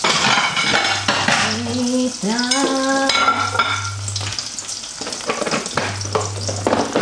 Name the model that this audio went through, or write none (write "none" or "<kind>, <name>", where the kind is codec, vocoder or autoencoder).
none